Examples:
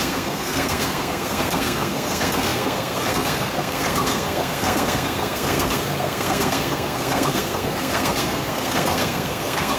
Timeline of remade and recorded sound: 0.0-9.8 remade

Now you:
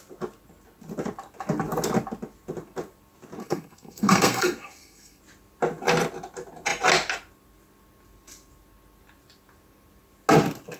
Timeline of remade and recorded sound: 0.0-3.4 recorded; 3.4-5.2 remade; 5.2-10.8 recorded

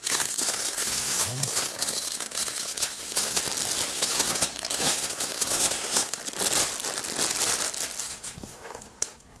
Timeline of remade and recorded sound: 0.0-3.4 remade; 3.4-3.9 recorded; 3.9-6.2 remade; 6.2-8.0 recorded; 8.0-9.4 remade

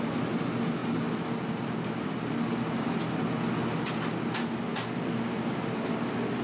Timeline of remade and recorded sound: 0.0-6.4 recorded